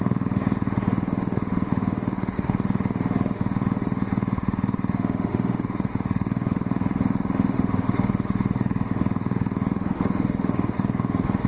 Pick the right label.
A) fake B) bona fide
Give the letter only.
A